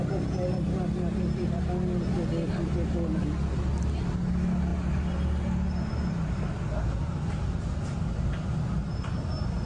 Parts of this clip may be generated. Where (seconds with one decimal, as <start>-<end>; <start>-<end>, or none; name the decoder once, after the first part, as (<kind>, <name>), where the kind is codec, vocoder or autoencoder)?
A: none